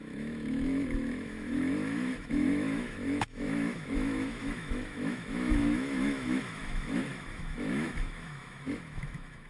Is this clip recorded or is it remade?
remade